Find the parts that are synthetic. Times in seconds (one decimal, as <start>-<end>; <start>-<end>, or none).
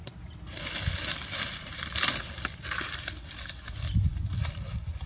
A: none